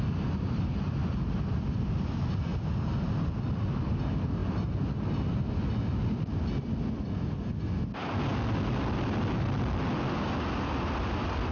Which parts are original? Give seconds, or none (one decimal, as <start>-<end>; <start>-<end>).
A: 0.0-11.5